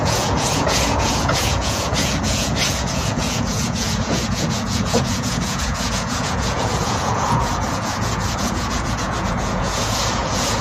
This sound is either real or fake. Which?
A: fake